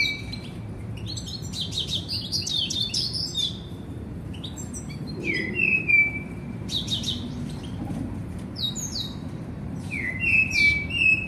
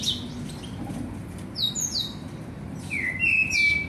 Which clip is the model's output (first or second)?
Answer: first